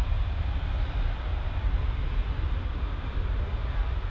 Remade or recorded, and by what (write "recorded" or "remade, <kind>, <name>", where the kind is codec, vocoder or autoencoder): recorded